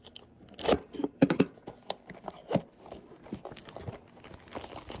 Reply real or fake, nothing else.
real